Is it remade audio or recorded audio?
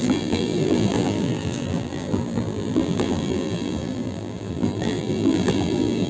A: remade